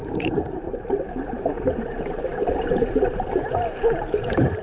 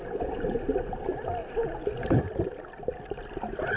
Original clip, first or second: second